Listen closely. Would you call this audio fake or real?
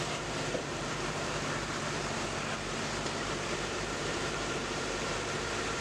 fake